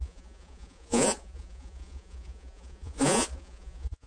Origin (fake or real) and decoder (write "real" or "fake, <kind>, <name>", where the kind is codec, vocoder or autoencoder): fake, vocoder, Vocos